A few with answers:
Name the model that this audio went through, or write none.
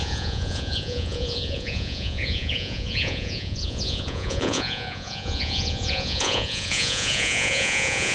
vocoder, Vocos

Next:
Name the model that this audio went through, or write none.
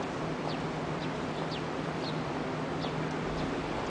none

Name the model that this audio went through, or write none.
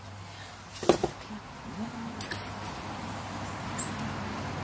none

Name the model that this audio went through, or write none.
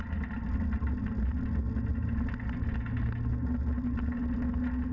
none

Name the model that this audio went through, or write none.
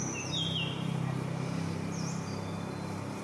none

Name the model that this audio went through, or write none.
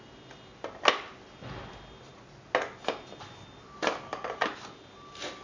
none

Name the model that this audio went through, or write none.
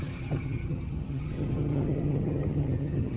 vocoder, HiFi-GAN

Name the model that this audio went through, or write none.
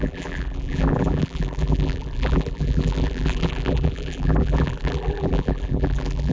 vocoder, BigVGAN v2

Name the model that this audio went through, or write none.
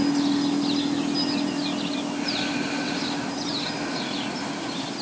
none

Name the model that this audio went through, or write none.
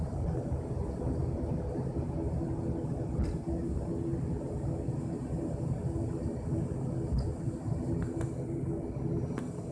none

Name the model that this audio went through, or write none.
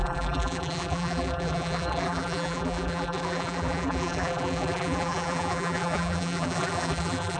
vocoder, BigVGAN v2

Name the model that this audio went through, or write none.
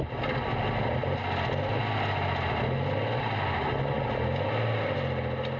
none